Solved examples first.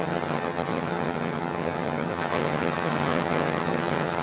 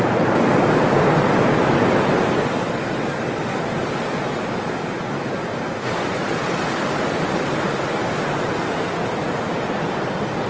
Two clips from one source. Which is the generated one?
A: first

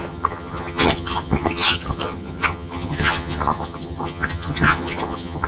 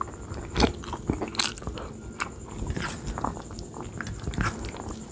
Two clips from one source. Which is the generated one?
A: first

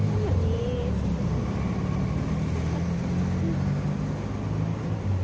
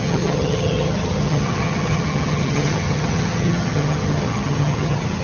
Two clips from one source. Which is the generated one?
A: second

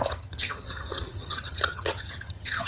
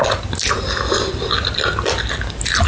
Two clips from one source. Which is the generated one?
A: first